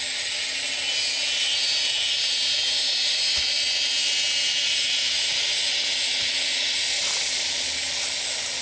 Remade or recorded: recorded